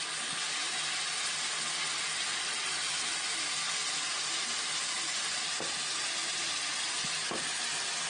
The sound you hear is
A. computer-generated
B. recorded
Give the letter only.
B